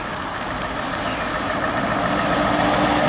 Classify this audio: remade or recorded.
recorded